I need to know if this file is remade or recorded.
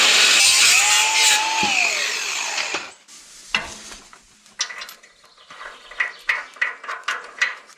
recorded